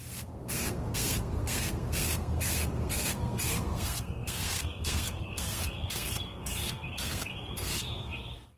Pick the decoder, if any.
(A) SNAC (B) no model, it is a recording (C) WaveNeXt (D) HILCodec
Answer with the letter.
A